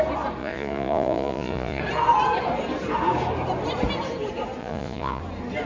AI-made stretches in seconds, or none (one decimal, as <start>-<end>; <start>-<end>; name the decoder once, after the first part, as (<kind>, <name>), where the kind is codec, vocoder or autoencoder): 0.4-1.8 (vocoder, Vocos); 4.6-5.2